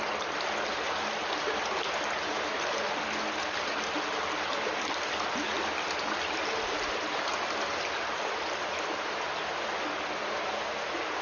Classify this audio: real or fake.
real